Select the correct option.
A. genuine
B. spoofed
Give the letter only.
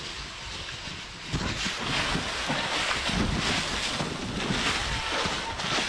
A